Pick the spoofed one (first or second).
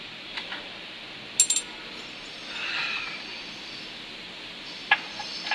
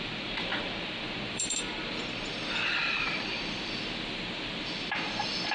second